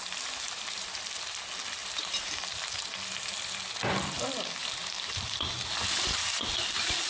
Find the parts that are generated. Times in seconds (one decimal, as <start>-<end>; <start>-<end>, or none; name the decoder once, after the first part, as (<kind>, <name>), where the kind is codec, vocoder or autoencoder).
1.8-2.8 (vocoder, BigVGAN v2); 4.6-5.4

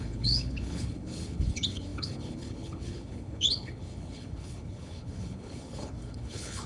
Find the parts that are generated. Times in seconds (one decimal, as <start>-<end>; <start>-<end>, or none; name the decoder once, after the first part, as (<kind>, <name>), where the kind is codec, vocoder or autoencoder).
0.0-6.7 (codec, HILCodec)

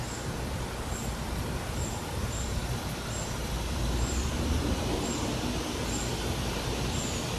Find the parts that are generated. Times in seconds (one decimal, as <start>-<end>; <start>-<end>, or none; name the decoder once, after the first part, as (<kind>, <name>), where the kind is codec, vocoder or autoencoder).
0.0-2.6 (vocoder, BigVGAN v2); 7.0-7.4

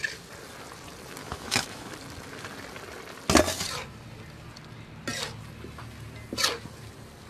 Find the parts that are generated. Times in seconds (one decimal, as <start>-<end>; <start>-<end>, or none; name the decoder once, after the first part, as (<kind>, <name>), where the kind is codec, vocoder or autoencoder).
1.2-1.9 (autoencoder, DAC-VAE)

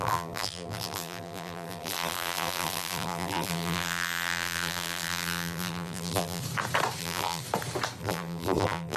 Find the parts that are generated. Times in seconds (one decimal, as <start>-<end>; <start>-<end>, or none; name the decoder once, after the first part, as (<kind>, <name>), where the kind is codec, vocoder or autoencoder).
0.0-6.4 (vocoder, BigVGAN v2); 7.0-7.4; 8.0-9.0

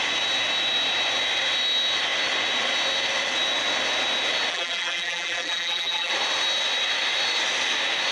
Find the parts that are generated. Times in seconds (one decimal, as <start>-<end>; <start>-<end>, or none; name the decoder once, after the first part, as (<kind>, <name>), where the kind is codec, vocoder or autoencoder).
4.5-6.1 (vocoder, BigVGAN v2)

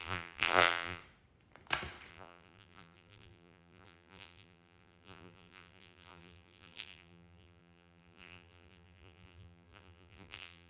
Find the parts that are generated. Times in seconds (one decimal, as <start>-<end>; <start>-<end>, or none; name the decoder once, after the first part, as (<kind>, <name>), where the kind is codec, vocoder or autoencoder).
0.0-1.0 (vocoder, BigVGAN v2); 2.1-10.7

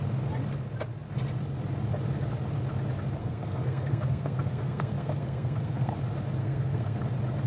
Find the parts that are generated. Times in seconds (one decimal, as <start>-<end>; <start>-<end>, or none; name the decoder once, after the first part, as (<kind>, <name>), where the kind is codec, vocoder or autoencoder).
3.2-5.9 (codec, SNAC); 6.4-7.0